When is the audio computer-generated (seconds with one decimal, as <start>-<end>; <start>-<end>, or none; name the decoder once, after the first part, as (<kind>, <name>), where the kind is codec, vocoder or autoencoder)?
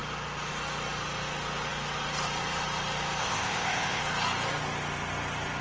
3.2-4.0 (codec, ZipCodec)